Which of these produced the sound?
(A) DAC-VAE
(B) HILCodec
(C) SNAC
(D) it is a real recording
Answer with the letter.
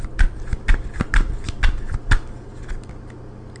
D